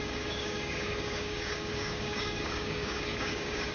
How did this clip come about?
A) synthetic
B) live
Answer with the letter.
A